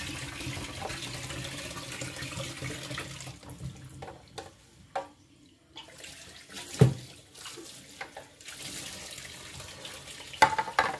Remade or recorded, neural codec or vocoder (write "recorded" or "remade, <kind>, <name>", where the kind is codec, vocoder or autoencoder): recorded